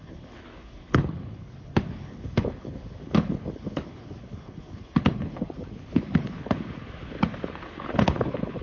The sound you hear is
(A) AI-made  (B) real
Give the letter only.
A